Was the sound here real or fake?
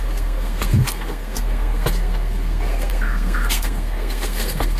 fake